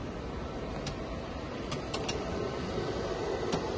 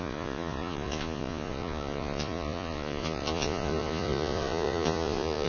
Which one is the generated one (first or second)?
second